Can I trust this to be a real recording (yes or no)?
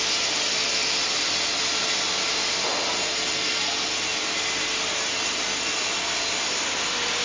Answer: yes